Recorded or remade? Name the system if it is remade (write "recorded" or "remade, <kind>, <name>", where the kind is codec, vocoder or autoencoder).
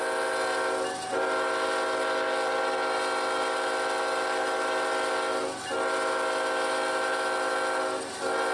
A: recorded